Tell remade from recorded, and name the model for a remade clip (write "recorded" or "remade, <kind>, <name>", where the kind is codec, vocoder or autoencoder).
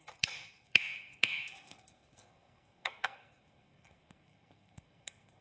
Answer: remade, codec, SNAC